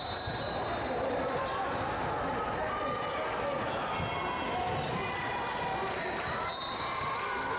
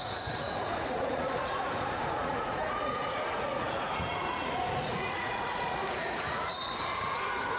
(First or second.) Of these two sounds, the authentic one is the first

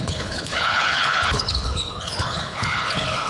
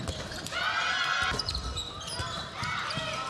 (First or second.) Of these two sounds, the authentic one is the second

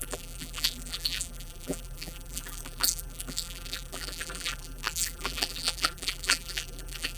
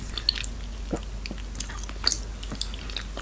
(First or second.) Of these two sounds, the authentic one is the second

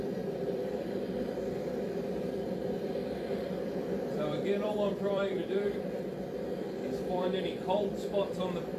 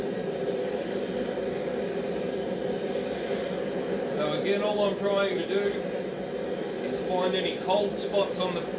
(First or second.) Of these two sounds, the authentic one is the second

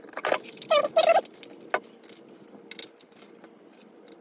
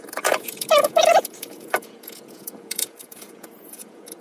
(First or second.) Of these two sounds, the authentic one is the first